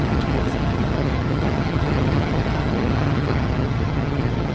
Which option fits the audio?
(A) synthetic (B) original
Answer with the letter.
A